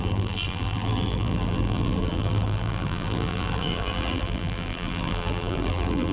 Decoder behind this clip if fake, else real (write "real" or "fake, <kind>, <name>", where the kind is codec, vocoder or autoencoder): fake, vocoder, BigVGAN v2